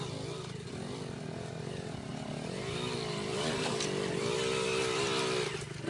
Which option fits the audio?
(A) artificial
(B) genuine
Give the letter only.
B